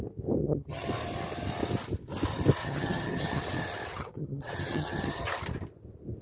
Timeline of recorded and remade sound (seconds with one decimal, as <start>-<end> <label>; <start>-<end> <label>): 0.0-0.4 recorded; 0.4-0.9 remade; 0.9-2.6 recorded; 2.6-3.4 remade; 3.4-3.9 recorded; 3.9-5.3 remade; 5.3-6.2 recorded